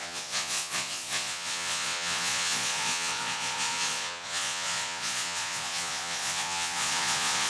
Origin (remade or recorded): remade